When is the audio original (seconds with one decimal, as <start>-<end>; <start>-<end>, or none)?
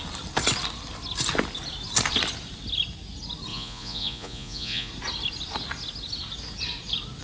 0.0-3.5; 4.9-7.2